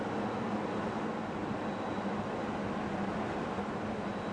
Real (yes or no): yes